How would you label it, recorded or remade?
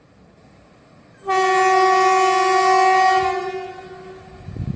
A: recorded